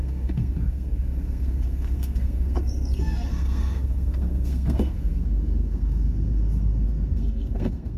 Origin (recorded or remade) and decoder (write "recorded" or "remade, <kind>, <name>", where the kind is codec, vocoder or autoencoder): remade, codec, SNAC